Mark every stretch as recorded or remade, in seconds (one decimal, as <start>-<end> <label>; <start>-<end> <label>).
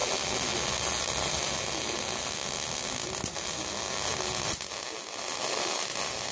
0.0-6.3 recorded